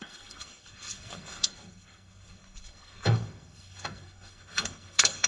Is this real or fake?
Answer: fake